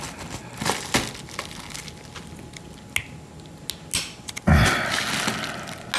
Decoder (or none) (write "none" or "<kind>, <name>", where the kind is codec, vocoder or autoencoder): none